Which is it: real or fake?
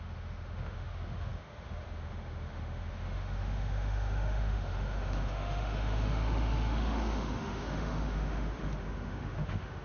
fake